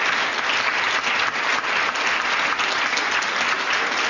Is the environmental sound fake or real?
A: real